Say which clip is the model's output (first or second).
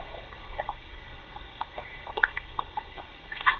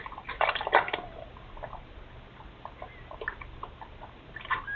first